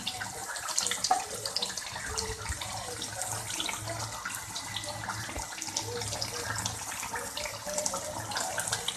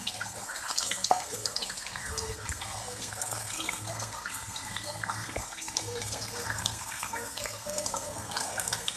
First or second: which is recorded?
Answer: first